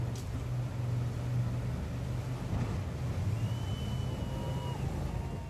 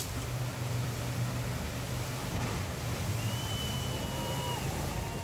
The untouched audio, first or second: first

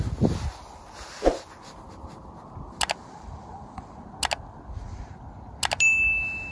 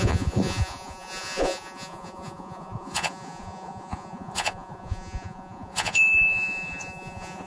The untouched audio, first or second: first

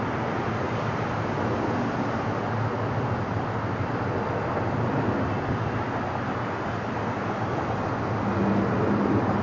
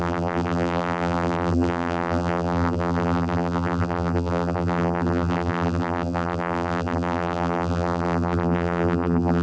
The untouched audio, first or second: first